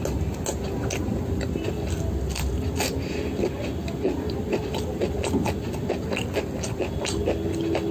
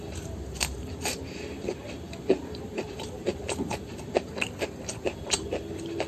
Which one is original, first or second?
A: first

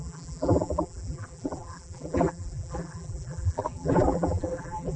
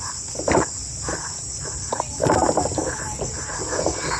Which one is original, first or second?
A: second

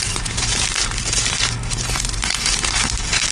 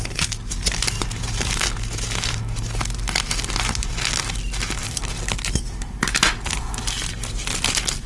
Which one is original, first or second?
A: second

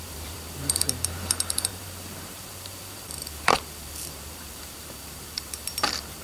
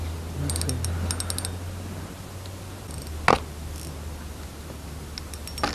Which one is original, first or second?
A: second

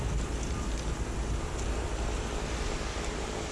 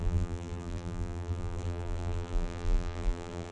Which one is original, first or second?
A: first